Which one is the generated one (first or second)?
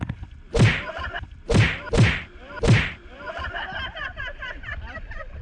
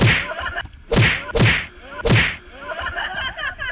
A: first